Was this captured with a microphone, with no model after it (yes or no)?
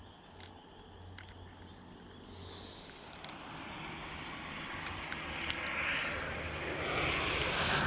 yes